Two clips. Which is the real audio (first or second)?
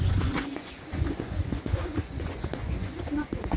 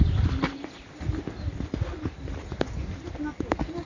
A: second